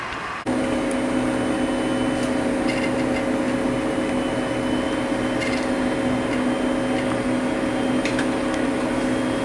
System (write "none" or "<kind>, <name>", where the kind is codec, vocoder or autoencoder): none